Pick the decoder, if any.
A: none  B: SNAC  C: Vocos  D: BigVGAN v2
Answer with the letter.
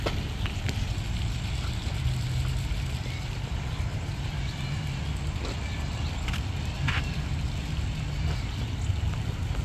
A